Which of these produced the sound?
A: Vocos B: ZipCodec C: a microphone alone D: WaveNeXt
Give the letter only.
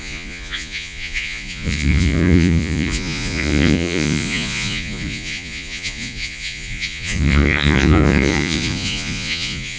A